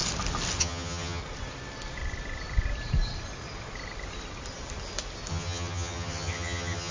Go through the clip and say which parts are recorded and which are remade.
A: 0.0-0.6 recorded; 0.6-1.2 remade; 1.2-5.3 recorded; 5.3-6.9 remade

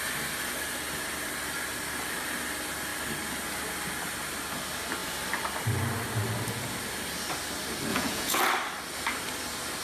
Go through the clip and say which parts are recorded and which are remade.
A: 0.0-7.9 recorded; 7.9-8.4 remade; 8.4-9.8 recorded